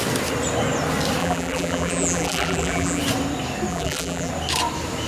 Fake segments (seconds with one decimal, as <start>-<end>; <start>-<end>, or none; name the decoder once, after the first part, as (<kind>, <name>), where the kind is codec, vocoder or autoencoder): 1.2-3.0 (vocoder, BigVGAN v2); 3.7-4.3